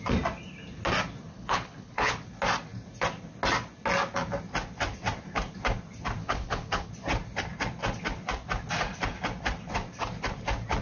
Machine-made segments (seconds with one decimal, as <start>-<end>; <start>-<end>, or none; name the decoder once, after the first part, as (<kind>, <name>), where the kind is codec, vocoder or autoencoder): 1.3-2.2 (codec, HILCodec); 6.2-6.9